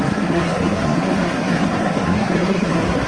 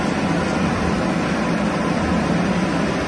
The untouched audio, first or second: second